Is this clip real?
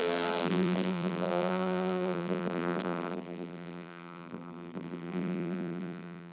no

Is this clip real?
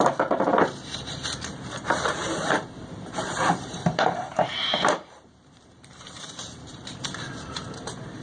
no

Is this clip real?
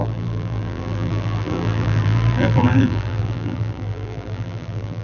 no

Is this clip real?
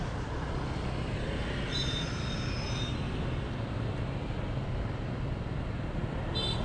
yes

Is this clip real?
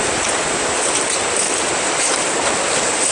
yes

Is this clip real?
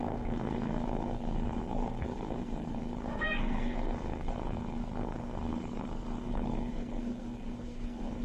no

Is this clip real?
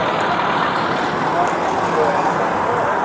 yes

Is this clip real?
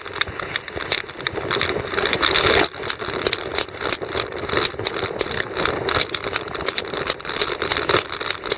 yes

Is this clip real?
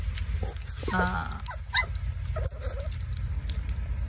yes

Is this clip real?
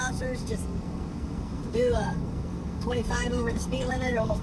no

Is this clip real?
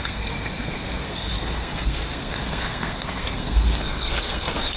no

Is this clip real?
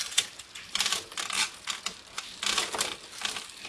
yes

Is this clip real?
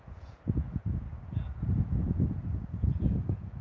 no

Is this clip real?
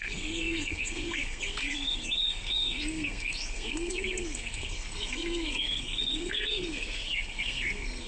no